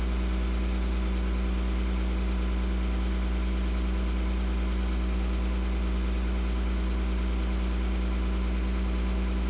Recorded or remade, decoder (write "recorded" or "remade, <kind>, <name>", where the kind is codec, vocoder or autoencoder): recorded